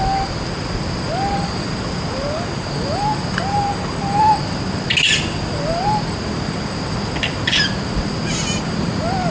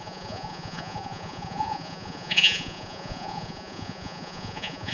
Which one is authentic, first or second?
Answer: first